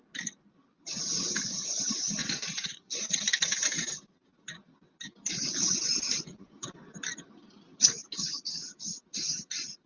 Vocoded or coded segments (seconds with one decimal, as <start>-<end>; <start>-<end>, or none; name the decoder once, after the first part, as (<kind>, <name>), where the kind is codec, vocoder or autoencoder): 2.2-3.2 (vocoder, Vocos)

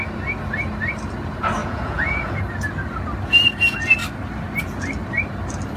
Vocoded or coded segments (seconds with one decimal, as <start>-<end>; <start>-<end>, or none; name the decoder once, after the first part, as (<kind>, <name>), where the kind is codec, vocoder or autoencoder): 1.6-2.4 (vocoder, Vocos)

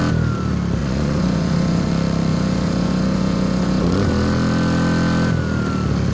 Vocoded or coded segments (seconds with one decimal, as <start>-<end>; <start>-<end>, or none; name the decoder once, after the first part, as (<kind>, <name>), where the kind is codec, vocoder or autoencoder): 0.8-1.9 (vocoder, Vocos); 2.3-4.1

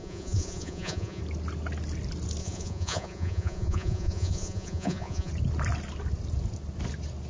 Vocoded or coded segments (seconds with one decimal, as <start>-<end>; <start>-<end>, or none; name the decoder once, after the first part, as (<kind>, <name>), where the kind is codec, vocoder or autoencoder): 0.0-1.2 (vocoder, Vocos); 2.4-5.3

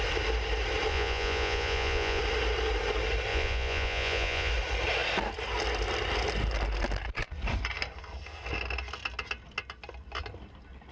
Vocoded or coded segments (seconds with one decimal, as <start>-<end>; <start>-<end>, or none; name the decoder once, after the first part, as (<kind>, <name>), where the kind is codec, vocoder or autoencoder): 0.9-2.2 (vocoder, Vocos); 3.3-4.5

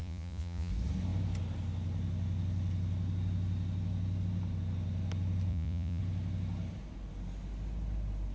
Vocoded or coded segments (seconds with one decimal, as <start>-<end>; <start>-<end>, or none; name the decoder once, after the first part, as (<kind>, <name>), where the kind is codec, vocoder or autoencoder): 0.0-0.7 (vocoder, Vocos); 5.5-6.0

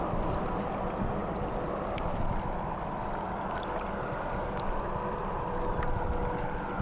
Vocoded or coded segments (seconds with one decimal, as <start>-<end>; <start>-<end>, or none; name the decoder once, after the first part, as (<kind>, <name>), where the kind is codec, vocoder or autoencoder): none

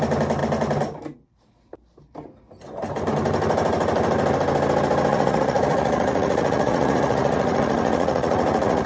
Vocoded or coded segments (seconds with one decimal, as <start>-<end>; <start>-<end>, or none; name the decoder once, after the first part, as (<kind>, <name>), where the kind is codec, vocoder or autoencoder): 5.1-8.9 (vocoder, Vocos)